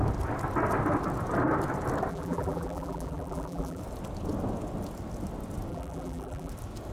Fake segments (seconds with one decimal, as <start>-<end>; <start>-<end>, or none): 2.1-3.8; 5.7-6.5